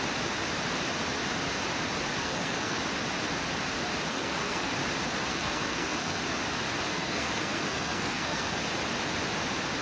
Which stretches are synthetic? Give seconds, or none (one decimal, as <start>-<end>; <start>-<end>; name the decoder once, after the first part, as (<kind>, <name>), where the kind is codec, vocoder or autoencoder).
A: 2.2-2.8 (codec, SNAC); 4.1-4.7; 5.3-6.2; 6.9-8.6